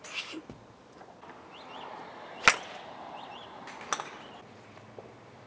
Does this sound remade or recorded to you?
recorded